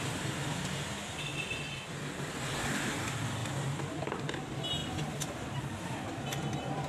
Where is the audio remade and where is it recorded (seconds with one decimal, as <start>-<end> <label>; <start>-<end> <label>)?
0.0-3.4 recorded; 3.4-4.0 remade; 4.0-6.9 recorded